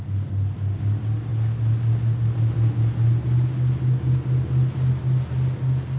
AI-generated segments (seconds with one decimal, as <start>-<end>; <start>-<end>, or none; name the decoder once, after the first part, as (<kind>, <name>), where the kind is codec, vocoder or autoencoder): none